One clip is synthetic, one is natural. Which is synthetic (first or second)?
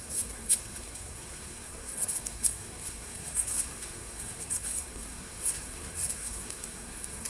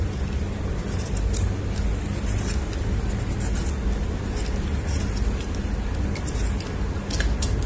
first